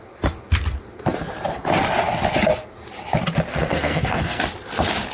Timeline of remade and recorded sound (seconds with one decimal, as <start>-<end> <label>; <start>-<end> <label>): 0.0-3.5 recorded; 3.5-4.4 remade; 4.4-5.1 recorded